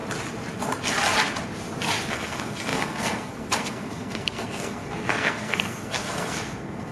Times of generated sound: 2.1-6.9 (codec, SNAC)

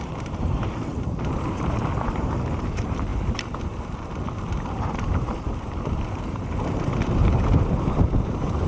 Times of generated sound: 0.0-8.7 (vocoder, BigVGAN v2)

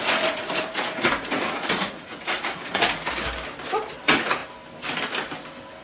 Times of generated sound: 0.0-3.0 (vocoder, Vocos); 4.0-4.4

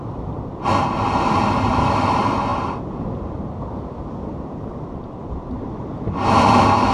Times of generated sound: 4.3-5.7 (vocoder, BigVGAN v2)

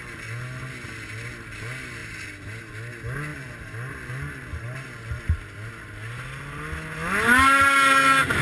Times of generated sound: none

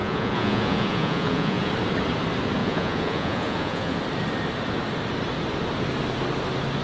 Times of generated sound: 0.0-1.7 (vocoder, Vocos); 2.6-4.0